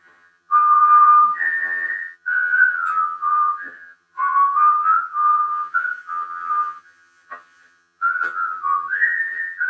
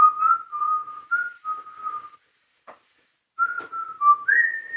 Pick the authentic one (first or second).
second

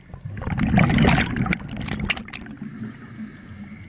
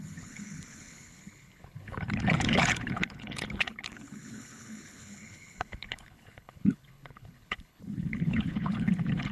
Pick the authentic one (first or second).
first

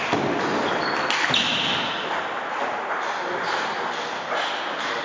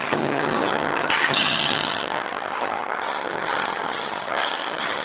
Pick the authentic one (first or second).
first